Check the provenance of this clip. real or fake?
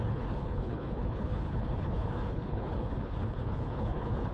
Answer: fake